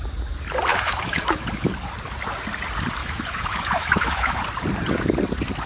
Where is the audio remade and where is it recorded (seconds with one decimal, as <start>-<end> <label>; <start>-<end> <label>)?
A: 0.0-0.7 recorded; 0.7-1.7 remade; 1.7-3.0 recorded; 3.0-4.4 remade; 4.4-5.7 recorded